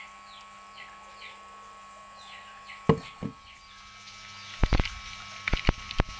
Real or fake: real